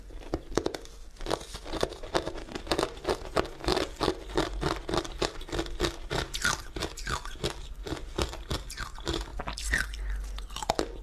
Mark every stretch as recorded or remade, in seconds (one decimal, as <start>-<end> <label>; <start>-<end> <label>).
0.0-11.0 recorded